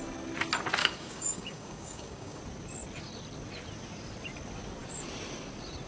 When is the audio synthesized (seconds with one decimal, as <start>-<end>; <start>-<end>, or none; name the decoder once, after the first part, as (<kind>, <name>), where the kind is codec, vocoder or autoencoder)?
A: 0.8-2.4 (codec, DAC)